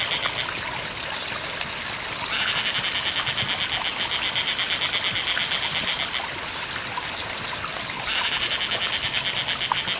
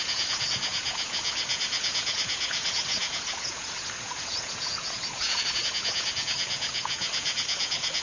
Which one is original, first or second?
first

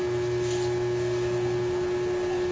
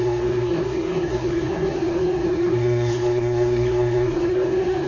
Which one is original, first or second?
first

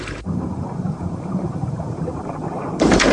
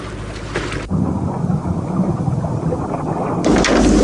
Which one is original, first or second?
second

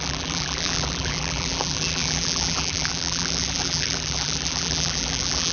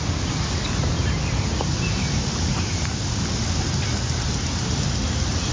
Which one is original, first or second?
second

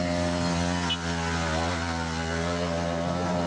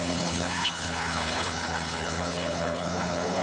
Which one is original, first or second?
first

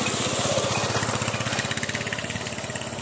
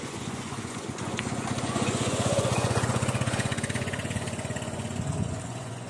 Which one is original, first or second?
first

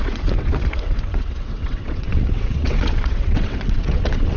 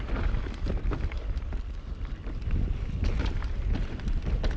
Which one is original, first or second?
second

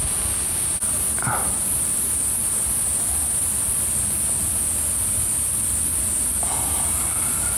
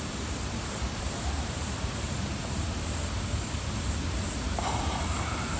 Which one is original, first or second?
first